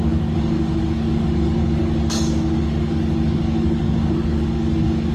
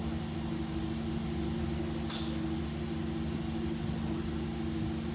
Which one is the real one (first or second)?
second